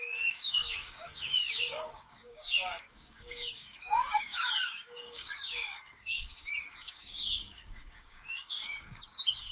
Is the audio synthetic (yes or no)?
yes